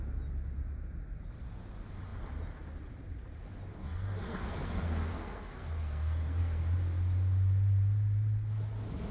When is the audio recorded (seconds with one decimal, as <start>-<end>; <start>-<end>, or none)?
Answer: 0.0-3.8; 6.6-9.1